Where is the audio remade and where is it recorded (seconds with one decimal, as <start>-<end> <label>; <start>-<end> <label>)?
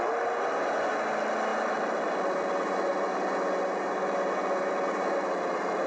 0.0-5.9 recorded